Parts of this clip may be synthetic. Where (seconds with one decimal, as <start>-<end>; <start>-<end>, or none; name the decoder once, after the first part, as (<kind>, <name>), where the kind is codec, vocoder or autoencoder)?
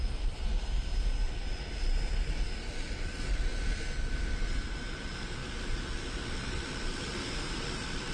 0.0-0.9 (vocoder, BigVGAN v2); 2.2-3.5; 4.5-8.1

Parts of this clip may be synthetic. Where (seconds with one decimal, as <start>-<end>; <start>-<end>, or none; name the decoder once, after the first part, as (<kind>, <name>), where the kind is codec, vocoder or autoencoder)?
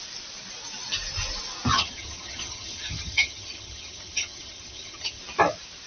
1.7-5.2 (vocoder, HiFi-GAN)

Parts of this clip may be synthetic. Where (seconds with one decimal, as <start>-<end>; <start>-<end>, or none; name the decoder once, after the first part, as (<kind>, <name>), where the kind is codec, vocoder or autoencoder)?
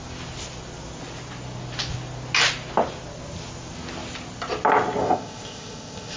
5.0-6.2 (codec, ZipCodec)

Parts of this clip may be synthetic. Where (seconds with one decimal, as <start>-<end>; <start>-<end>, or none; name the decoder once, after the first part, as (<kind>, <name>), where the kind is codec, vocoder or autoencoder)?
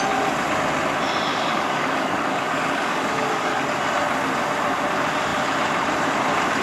1.3-3.6 (codec, DAC)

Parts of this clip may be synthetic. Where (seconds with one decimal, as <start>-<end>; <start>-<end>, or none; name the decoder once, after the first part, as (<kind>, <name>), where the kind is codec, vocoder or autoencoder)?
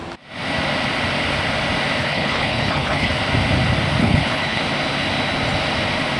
2.0-3.1 (codec, HILCodec); 4.0-4.6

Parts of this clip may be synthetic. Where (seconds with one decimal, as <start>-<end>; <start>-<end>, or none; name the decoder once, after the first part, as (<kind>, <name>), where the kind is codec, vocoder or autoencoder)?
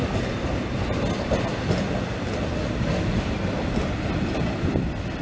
none